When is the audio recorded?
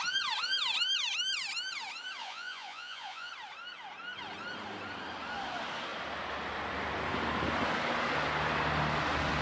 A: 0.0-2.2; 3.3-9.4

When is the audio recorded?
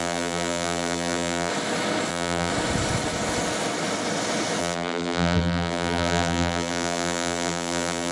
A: 1.5-2.1; 2.5-4.6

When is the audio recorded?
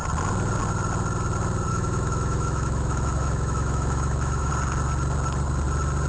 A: 0.0-1.7; 4.5-6.1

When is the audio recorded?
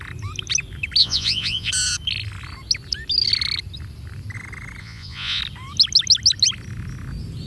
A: 0.0-1.0; 1.7-4.8; 5.4-7.5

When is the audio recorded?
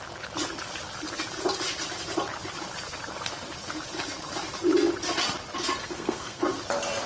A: 0.0-5.8; 6.4-7.1